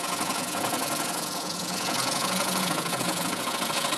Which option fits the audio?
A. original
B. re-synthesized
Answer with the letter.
B